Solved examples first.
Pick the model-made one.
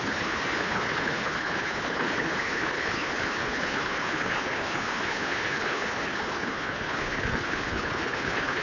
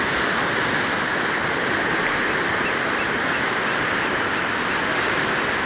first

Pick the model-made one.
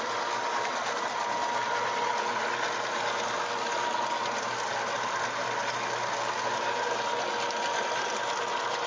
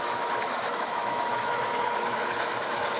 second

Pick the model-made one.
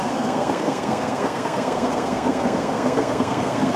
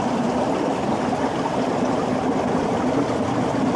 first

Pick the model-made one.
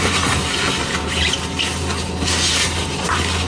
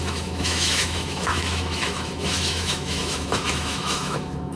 second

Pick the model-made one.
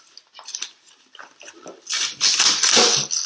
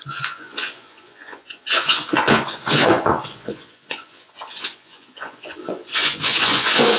second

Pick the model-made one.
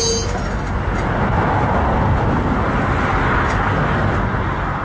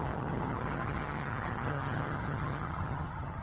second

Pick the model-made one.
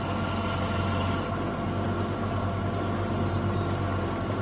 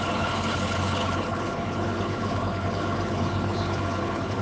second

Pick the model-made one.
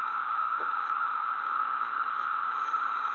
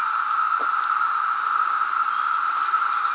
first